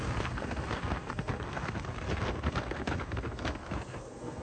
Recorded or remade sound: remade